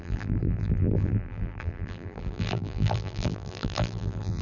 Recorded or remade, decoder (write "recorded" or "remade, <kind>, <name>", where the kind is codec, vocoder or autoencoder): remade, vocoder, BigVGAN v2